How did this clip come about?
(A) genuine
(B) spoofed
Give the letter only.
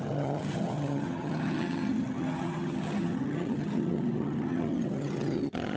B